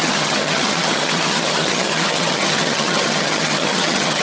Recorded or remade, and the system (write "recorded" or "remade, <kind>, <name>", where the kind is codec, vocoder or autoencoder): remade, vocoder, HiFi-GAN